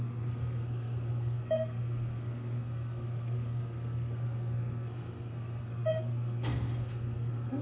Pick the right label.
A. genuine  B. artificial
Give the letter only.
B